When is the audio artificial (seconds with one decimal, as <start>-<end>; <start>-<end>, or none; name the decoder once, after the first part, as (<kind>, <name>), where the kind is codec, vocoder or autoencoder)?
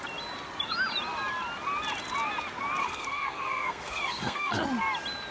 2.8-4.6 (codec, SNAC)